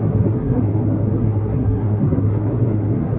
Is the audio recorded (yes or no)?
no